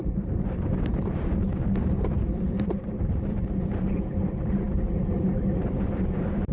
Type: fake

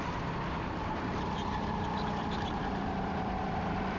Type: fake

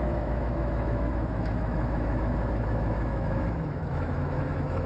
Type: fake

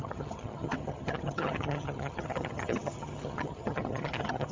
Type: fake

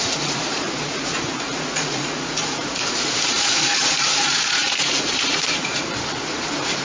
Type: fake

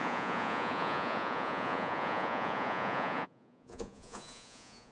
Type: fake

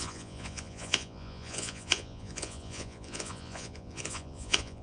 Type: fake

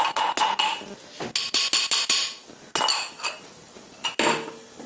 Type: real